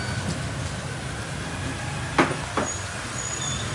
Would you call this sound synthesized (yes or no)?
no